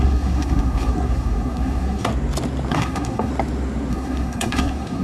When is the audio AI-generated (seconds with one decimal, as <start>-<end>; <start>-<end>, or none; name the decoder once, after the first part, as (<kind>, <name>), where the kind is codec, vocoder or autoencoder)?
0.0-2.1 (codec, SNAC); 2.7-3.3; 3.9-5.0